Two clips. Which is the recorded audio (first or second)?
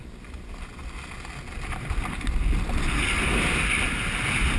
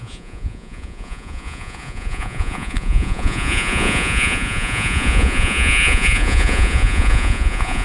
first